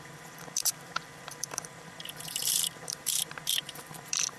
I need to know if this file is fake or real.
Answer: fake